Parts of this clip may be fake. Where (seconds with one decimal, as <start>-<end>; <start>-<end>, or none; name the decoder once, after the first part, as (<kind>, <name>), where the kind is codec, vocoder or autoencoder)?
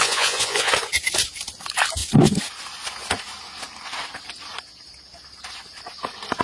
0.0-0.7 (vocoder, Vocos)